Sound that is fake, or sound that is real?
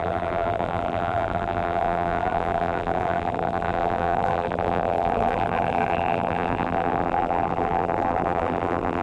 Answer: fake